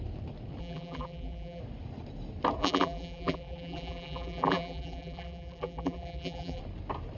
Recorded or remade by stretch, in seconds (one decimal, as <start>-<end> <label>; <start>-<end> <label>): 0.0-0.6 recorded; 0.6-1.6 remade; 1.6-2.6 recorded; 2.6-6.6 remade; 6.6-7.2 recorded